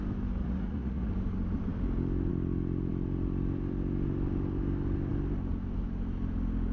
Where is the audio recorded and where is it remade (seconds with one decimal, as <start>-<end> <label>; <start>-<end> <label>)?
0.0-0.4 recorded; 0.4-1.1 remade; 1.1-6.7 recorded